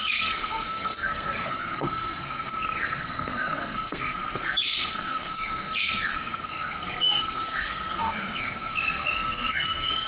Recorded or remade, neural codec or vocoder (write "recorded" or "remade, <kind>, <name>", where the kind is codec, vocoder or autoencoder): remade, codec, SNAC